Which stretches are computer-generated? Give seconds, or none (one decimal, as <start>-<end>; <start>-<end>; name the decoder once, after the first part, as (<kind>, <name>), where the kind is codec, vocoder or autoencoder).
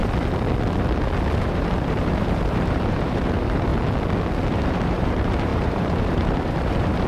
1.4-3.7 (vocoder, BigVGAN v2); 4.6-7.1